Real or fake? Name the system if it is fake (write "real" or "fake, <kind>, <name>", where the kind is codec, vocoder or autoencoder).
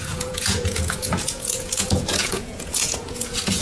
fake, vocoder, Vocos